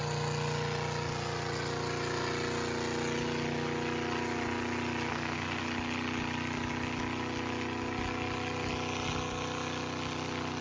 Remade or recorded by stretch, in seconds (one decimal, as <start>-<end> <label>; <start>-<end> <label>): 0.0-5.1 recorded; 5.1-5.6 remade; 5.6-10.6 recorded